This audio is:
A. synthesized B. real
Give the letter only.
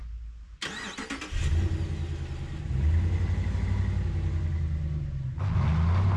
B